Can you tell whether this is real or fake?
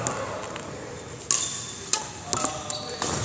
real